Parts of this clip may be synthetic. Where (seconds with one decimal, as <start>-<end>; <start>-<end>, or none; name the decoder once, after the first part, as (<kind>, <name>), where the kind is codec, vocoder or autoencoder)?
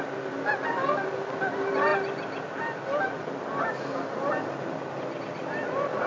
none